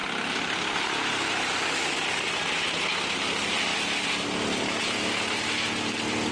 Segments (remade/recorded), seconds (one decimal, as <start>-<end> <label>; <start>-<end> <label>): 0.0-3.7 recorded; 3.7-4.2 remade; 4.2-6.3 recorded